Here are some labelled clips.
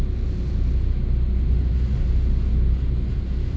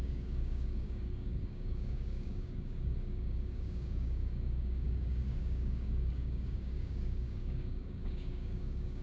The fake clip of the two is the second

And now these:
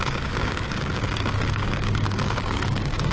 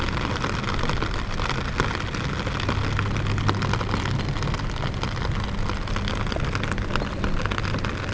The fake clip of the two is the first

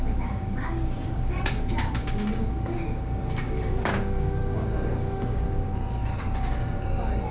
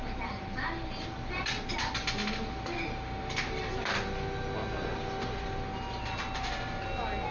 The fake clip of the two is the first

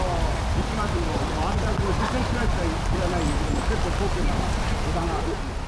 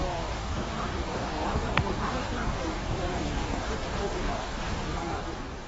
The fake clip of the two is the second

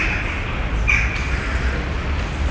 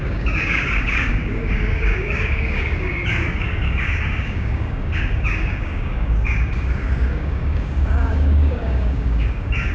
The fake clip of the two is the second